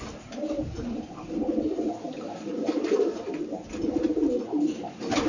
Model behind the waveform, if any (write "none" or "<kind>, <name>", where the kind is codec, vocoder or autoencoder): none